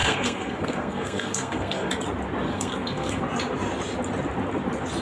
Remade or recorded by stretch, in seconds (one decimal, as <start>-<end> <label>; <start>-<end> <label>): 0.0-1.9 remade; 1.9-2.5 recorded; 2.5-3.2 remade; 3.2-5.0 recorded